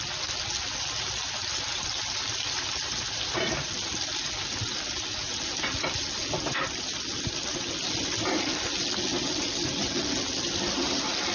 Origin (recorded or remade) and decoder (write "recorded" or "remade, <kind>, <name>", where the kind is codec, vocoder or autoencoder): recorded